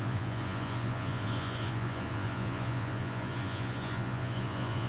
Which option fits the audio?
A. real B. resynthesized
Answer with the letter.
B